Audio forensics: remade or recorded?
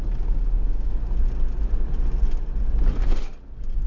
recorded